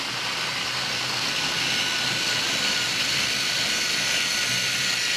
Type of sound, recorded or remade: recorded